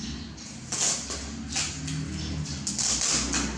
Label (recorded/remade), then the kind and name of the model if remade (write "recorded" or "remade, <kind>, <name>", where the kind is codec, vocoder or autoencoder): recorded